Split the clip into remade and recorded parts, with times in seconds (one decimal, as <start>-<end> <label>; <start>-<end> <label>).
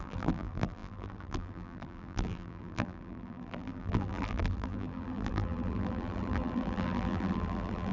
0.0-7.9 remade